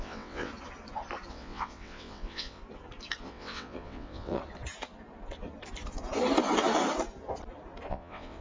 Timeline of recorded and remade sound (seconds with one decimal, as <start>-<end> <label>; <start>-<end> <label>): 0.0-0.5 remade; 0.5-1.3 recorded; 1.3-2.6 remade; 2.6-3.2 recorded; 3.2-4.4 remade; 4.4-7.9 recorded; 7.9-8.4 remade